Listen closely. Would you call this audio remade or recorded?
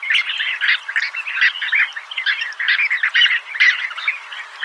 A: recorded